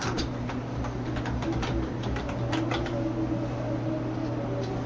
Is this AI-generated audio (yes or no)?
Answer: no